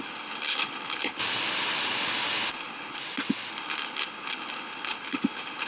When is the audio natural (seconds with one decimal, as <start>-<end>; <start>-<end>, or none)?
1.2-2.5; 3.0-3.5